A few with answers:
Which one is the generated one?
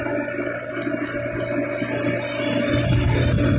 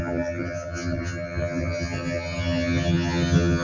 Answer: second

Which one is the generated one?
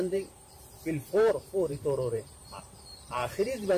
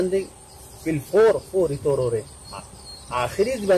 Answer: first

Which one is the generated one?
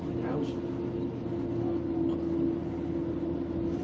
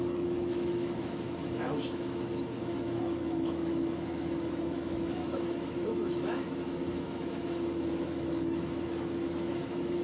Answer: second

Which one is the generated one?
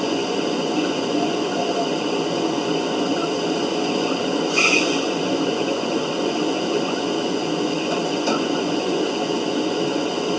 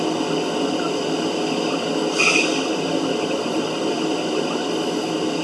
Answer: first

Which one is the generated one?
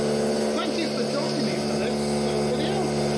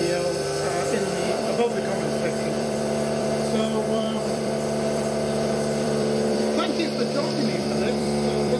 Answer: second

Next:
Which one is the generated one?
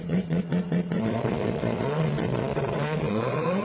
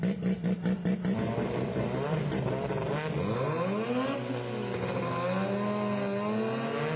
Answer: first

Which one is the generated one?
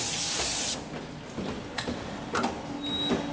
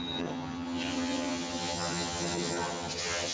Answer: second